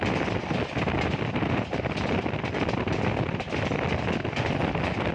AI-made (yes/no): no